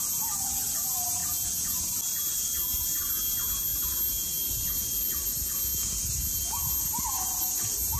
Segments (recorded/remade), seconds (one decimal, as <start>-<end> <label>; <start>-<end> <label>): 0.0-8.0 recorded